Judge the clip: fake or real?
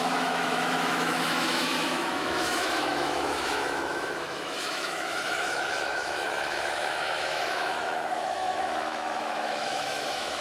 fake